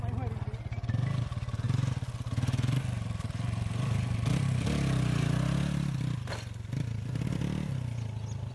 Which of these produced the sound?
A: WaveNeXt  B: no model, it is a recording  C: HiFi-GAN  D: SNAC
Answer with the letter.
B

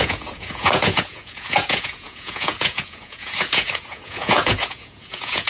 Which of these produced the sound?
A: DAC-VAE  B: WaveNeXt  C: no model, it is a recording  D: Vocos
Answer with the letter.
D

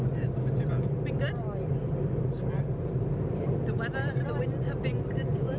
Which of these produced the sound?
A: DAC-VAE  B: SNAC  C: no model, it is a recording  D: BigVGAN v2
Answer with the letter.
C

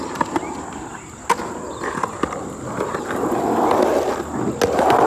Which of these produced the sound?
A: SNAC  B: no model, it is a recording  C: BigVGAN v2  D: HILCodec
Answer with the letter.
B